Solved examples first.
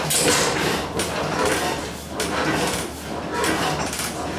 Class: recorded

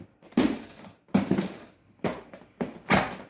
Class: recorded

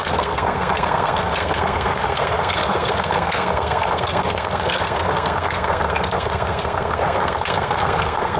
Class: remade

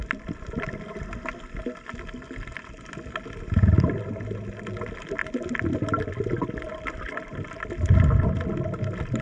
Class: recorded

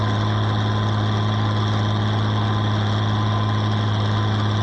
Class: recorded